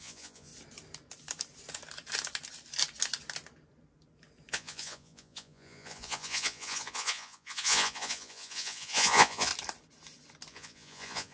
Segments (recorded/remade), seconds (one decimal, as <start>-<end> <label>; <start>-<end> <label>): 0.0-0.5 remade; 0.5-4.5 recorded; 4.5-9.5 remade; 9.5-10.5 recorded; 10.5-11.3 remade